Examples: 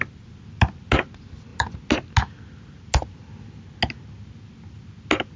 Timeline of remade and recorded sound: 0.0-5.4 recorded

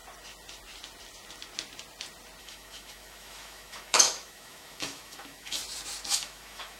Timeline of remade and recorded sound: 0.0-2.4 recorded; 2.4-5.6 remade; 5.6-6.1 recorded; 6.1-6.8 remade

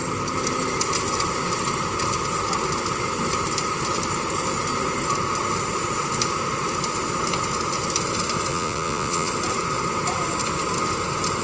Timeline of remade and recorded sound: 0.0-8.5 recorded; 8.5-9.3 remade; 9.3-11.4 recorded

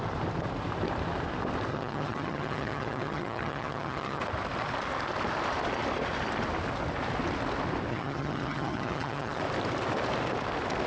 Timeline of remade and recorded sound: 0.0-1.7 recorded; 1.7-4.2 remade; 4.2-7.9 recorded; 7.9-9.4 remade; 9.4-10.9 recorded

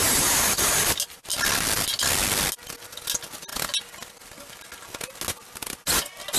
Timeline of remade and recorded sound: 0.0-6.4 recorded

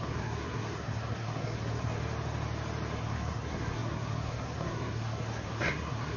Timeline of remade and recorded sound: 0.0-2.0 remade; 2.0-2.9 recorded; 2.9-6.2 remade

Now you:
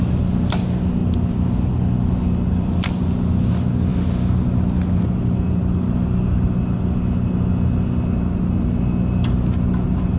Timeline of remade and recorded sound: 0.0-10.2 recorded

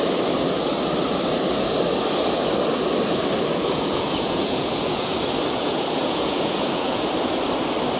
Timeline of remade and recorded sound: 0.0-3.5 recorded; 3.5-5.1 remade; 5.1-5.6 recorded; 5.6-7.0 remade; 7.0-8.0 recorded